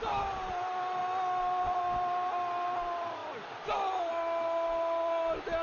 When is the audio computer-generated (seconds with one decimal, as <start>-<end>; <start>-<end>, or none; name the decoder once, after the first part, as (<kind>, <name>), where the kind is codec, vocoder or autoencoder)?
none